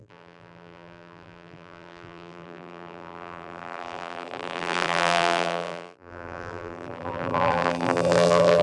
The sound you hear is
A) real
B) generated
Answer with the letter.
B